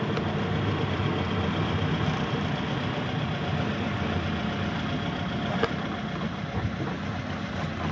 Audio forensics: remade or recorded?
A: recorded